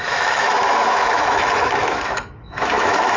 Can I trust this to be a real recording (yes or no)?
no